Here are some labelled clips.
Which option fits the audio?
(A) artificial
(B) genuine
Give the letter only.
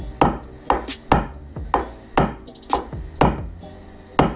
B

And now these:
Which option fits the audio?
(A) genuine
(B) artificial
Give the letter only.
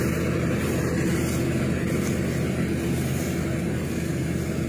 A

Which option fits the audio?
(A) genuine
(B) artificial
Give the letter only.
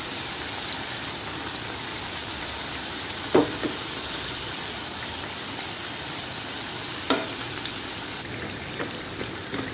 B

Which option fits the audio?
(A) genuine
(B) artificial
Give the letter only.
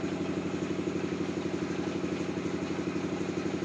A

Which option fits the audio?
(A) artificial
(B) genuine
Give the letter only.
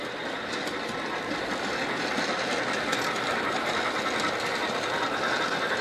B